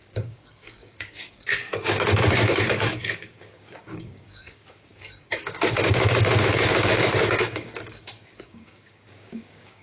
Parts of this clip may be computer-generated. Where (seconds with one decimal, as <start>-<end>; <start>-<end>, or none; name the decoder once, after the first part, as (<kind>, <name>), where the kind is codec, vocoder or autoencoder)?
0.0-9.8 (codec, DAC)